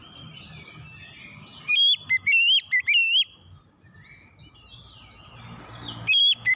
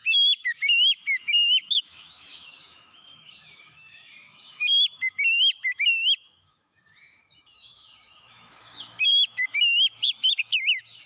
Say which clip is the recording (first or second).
first